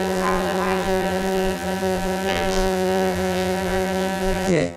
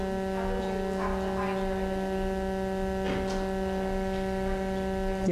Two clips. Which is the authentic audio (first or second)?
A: second